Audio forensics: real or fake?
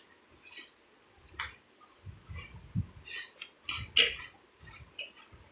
real